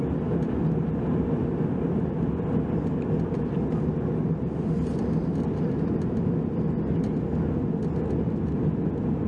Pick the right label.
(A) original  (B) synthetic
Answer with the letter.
A